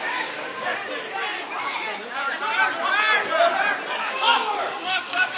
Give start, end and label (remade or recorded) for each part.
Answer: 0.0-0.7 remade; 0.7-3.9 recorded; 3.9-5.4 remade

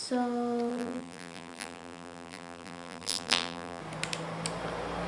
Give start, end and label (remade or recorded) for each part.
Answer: 0.0-0.7 recorded; 0.7-3.8 remade; 3.8-5.1 recorded